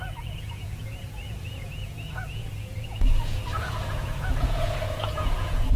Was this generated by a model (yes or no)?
yes